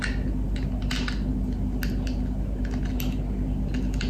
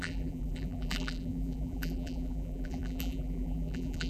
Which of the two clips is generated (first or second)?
second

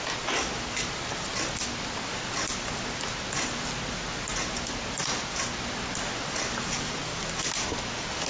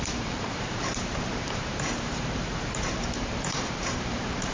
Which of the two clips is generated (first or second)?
second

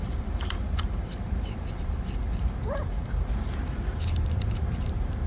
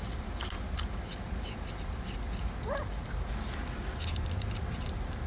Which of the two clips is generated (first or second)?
first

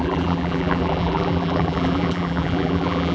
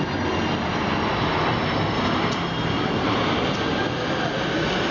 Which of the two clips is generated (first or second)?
first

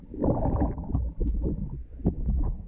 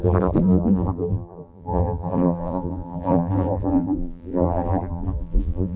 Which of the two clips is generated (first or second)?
second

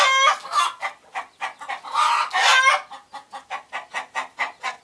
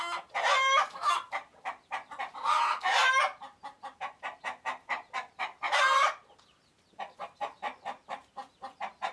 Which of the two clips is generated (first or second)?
second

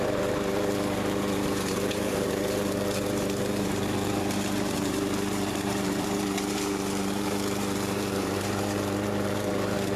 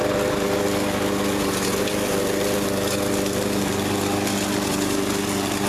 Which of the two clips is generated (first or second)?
first